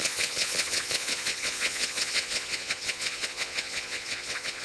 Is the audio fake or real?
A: fake